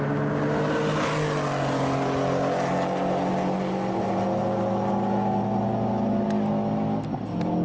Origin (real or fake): real